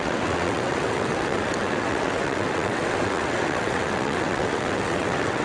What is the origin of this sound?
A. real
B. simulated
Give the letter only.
B